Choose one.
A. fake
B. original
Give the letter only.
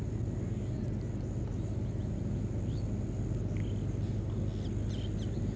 B